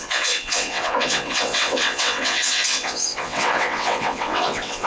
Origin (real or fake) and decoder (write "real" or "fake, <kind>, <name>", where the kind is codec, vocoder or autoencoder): fake, vocoder, WaveNeXt